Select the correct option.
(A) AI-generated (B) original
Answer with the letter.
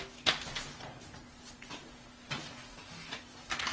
B